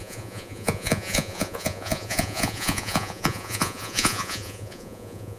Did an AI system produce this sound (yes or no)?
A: yes